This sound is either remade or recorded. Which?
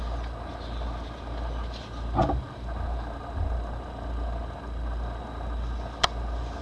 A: recorded